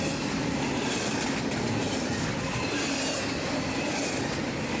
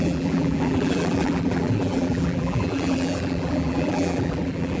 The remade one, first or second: second